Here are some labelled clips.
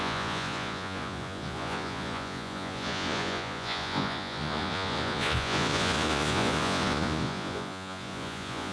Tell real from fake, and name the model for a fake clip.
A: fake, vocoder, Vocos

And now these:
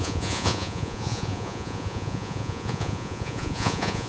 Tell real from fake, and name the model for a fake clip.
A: fake, vocoder, Vocos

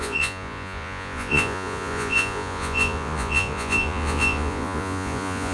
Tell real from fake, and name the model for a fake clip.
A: fake, vocoder, Vocos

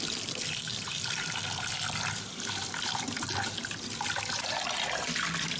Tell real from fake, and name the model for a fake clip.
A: real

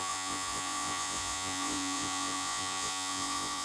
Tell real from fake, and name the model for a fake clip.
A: fake, vocoder, Vocos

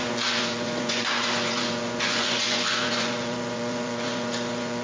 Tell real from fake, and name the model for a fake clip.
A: fake, vocoder, Vocos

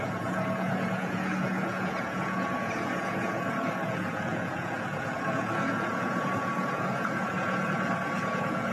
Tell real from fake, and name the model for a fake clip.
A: fake, vocoder, Vocos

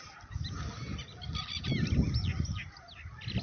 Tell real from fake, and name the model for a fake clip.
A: real